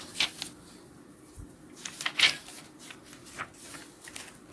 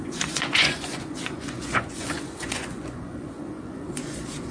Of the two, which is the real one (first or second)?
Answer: first